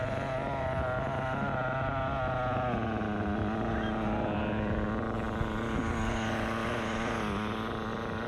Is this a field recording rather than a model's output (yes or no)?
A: yes